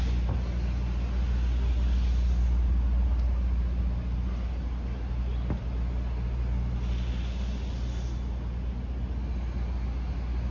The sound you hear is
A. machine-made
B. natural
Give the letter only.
B